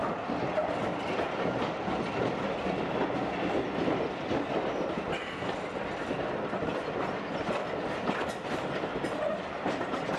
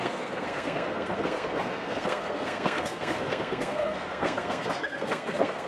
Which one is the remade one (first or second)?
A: second